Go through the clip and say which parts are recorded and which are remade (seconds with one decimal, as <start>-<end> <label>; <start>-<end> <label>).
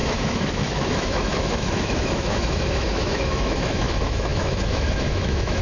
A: 0.0-5.6 remade